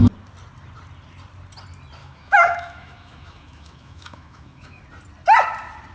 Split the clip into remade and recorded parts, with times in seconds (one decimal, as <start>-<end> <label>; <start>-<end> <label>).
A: 0.0-2.0 recorded; 2.0-4.8 remade; 4.8-5.9 recorded

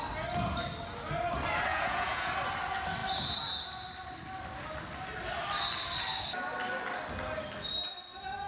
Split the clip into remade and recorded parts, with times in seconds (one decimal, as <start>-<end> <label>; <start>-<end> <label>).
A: 0.0-1.7 recorded; 1.7-2.3 remade; 2.3-8.5 recorded

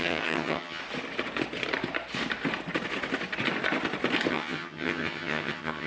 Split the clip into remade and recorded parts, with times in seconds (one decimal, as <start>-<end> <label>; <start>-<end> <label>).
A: 0.0-0.8 remade; 0.8-4.3 recorded; 4.3-5.9 remade